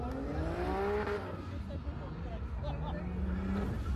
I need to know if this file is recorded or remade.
recorded